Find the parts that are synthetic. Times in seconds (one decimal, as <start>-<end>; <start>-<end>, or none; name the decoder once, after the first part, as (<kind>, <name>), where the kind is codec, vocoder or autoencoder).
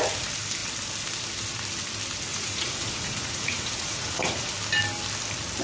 2.3-4.5 (vocoder, Vocos)